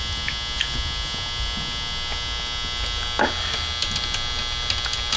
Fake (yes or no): no